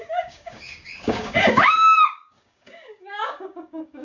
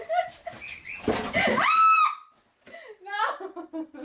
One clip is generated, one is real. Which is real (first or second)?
second